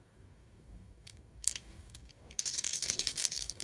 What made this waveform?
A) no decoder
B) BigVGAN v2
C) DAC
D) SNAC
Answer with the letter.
C